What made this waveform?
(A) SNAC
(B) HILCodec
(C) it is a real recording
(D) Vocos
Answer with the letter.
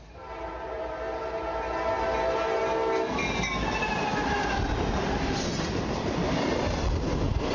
C